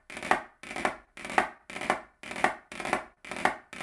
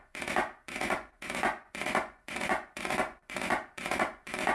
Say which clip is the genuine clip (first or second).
first